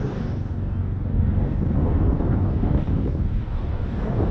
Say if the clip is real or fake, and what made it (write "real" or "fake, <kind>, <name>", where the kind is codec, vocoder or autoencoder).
fake, codec, DAC